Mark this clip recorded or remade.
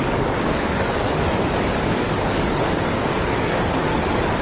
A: remade